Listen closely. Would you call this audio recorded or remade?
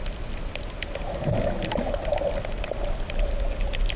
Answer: recorded